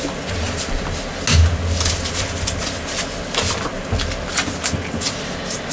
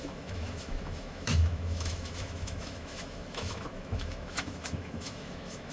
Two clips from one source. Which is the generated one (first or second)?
second